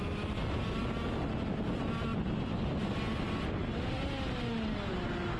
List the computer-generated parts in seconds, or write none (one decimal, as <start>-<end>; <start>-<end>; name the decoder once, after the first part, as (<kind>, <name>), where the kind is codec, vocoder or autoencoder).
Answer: none